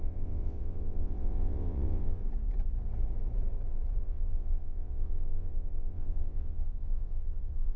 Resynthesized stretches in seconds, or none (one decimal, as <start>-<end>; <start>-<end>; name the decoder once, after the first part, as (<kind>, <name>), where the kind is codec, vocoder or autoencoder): 0.0-2.2 (vocoder, WaveNeXt); 4.0-7.8